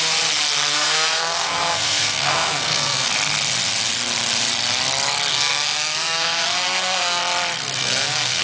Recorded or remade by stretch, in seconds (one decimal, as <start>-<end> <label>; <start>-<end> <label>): 0.0-0.7 recorded; 0.7-3.1 remade; 3.1-5.3 recorded; 5.3-7.2 remade; 7.2-7.8 recorded; 7.8-8.4 remade